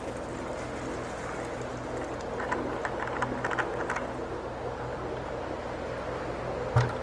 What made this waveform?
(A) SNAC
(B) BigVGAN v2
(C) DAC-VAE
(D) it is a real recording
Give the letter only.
D